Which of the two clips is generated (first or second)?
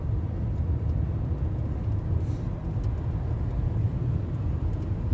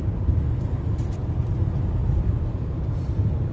second